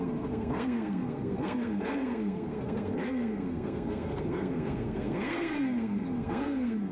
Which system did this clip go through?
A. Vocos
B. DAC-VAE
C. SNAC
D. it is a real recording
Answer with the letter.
C